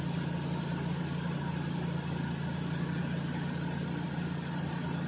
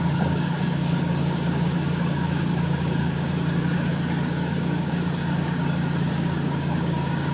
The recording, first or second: first